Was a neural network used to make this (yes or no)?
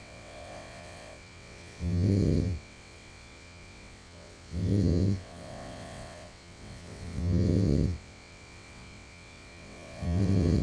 yes